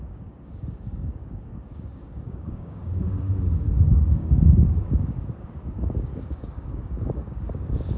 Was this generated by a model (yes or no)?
yes